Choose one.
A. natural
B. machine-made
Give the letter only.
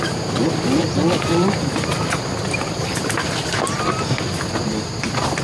A